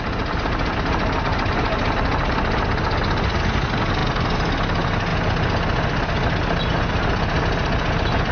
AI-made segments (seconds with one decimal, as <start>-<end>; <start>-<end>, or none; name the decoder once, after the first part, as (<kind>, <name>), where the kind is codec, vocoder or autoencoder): none